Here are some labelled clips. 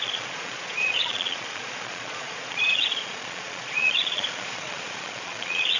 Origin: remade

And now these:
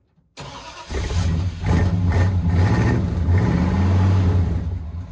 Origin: recorded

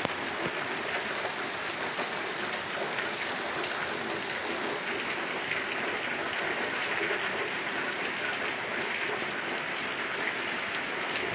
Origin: recorded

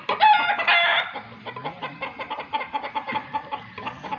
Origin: recorded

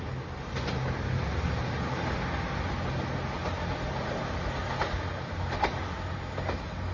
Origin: recorded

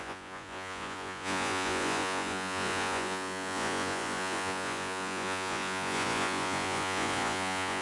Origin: remade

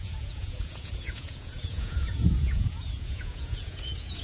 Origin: remade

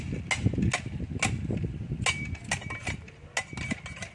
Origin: recorded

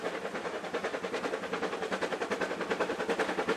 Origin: recorded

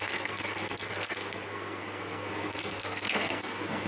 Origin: remade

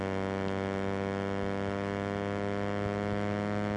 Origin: recorded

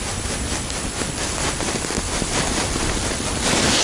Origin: recorded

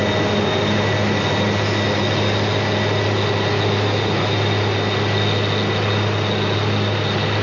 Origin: recorded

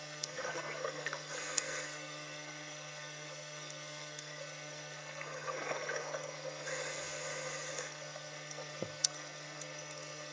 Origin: remade